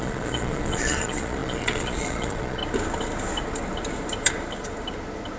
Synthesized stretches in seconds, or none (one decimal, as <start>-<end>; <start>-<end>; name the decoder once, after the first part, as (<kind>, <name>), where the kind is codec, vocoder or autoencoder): 0.0-2.6 (vocoder, Vocos)